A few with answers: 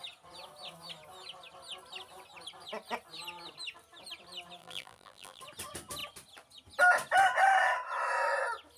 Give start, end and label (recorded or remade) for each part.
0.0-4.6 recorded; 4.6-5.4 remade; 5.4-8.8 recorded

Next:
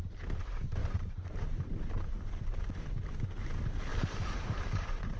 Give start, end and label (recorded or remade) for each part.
0.0-0.8 recorded; 0.8-1.8 remade; 1.8-3.9 recorded; 3.9-5.2 remade

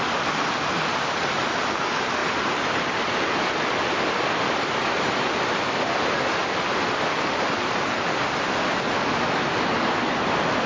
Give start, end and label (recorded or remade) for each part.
0.0-2.2 recorded; 2.2-2.9 remade; 2.9-10.7 recorded

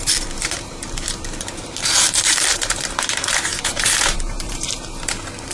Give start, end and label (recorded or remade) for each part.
0.0-5.5 remade

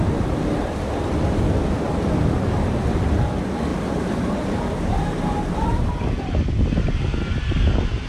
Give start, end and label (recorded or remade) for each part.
0.0-3.7 recorded; 3.7-5.9 remade; 5.9-8.1 recorded

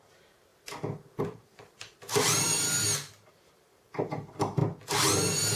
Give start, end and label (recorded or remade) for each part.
0.0-0.5 remade; 0.5-1.2 recorded; 1.2-2.5 remade; 2.5-3.3 recorded; 3.3-4.6 remade; 4.6-5.6 recorded

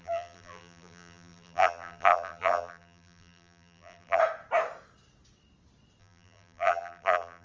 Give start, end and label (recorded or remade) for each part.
0.0-4.2 remade; 4.2-6.0 recorded; 6.0-7.4 remade